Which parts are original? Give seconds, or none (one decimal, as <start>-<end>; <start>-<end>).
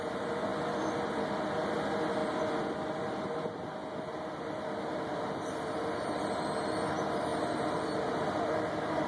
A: 0.0-9.1